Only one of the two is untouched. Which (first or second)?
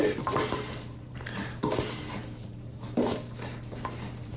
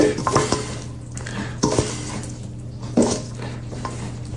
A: second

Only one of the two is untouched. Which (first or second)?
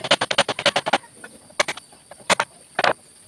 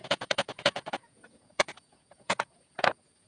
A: first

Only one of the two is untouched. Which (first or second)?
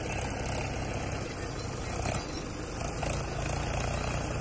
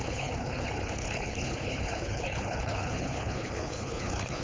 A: first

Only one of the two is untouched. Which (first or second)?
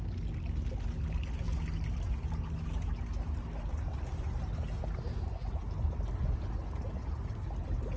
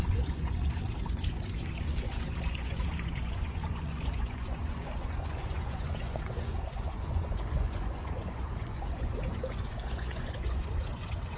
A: first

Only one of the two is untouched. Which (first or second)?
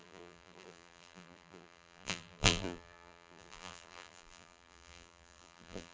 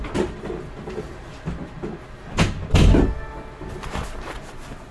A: second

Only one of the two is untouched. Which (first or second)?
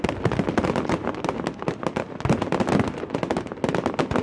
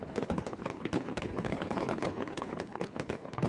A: first